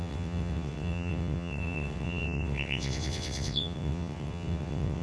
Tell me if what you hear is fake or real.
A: fake